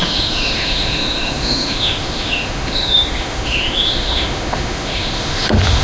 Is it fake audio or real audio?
fake